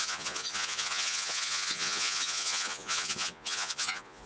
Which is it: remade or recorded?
remade